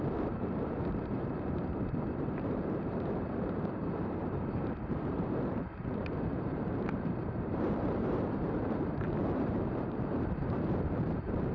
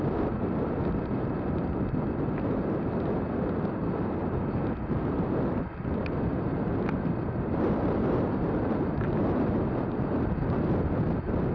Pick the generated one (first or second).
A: first